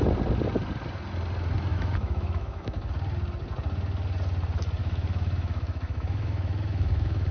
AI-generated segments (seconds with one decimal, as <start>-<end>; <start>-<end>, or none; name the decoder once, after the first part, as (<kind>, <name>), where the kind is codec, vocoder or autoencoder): 1.7-2.9 (autoencoder, DAC-VAE); 4.8-7.3